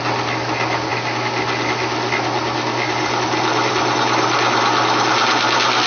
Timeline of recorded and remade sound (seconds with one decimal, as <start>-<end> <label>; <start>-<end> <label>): 0.0-5.9 recorded